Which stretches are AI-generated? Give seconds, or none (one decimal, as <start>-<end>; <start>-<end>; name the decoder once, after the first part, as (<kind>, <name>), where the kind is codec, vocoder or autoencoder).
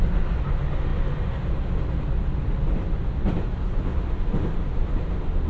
none